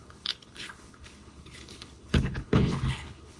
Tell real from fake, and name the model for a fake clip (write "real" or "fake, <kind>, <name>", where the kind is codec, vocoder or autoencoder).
fake, codec, HILCodec